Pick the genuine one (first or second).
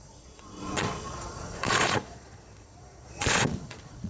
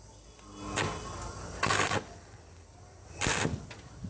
second